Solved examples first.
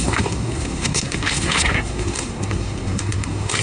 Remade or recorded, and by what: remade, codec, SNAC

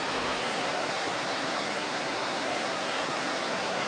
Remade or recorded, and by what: remade, codec, SNAC